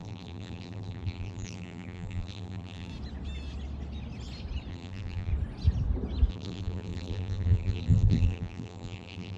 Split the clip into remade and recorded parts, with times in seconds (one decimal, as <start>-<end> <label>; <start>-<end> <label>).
0.0-2.9 remade; 2.9-4.7 recorded; 4.7-5.3 remade; 5.3-6.3 recorded; 6.3-9.4 remade